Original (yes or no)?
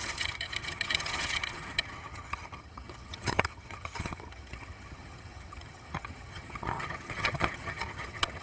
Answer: no